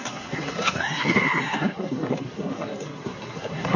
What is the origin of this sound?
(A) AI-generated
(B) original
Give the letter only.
A